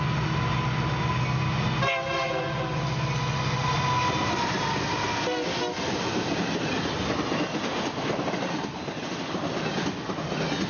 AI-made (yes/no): no